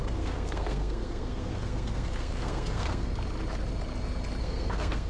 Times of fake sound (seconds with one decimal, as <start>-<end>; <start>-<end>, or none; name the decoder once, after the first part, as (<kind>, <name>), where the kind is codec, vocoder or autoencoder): 0.0-3.1 (codec, SNAC); 4.4-5.1